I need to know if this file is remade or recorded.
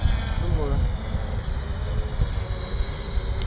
recorded